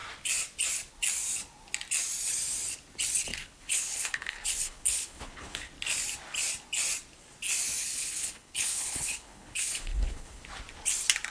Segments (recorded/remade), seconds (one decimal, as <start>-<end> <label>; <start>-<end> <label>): 0.0-3.3 recorded; 3.3-5.7 remade; 5.7-7.8 recorded; 7.8-10.4 remade; 10.4-11.3 recorded

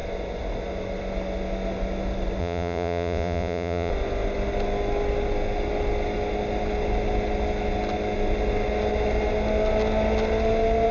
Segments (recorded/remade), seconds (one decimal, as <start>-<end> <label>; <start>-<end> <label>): 0.0-2.4 recorded; 2.4-3.9 remade; 3.9-10.9 recorded

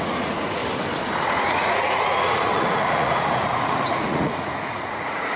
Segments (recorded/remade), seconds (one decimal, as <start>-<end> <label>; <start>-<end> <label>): 0.0-0.6 remade; 0.6-1.3 recorded; 1.3-5.4 remade

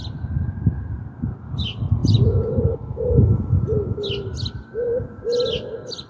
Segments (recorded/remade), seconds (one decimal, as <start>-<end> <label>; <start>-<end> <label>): 0.0-6.1 recorded

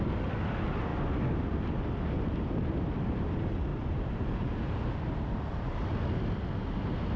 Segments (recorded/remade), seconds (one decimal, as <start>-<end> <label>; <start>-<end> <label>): 0.0-3.7 recorded; 3.7-4.8 remade; 4.8-7.2 recorded

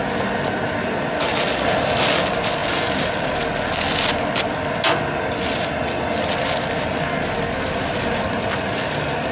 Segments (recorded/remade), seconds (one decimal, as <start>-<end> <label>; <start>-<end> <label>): 0.0-9.3 recorded

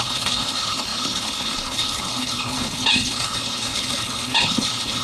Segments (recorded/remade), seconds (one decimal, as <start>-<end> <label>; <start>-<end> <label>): 0.0-5.0 remade